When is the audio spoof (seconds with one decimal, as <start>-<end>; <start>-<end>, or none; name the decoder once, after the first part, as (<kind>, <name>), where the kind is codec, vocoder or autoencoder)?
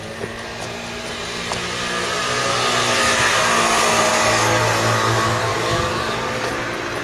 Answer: 4.1-4.6 (codec, DAC); 5.5-6.5